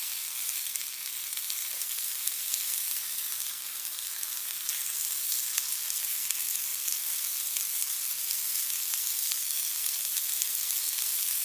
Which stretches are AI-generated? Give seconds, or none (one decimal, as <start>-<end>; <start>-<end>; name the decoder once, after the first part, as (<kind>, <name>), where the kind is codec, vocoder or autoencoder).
0.0-11.4 (codec, SNAC)